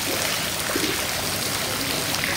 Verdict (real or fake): real